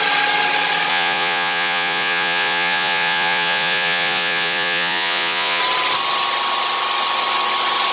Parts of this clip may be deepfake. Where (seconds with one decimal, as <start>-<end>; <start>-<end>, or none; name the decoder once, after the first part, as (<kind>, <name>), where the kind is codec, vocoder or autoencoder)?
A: 0.9-5.6 (vocoder, Vocos)